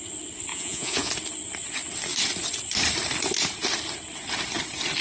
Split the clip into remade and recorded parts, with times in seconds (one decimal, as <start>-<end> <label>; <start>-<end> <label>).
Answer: 0.0-0.5 recorded; 0.5-1.1 remade; 1.1-5.0 recorded